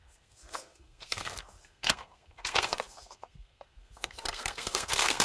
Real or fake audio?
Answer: fake